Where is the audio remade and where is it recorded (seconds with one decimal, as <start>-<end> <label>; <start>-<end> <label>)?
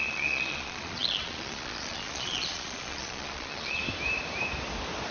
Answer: 0.0-3.8 remade; 3.8-5.1 recorded